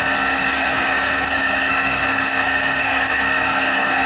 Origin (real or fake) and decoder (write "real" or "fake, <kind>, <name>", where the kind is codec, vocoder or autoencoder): fake, codec, SNAC